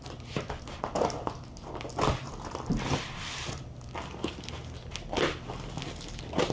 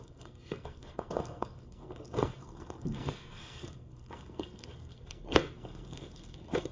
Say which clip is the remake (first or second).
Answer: second